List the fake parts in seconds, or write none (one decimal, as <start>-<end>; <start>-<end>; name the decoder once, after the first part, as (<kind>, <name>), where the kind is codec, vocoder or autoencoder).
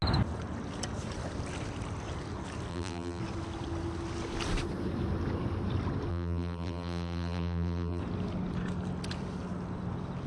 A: 2.7-3.2 (vocoder, BigVGAN v2); 6.1-8.0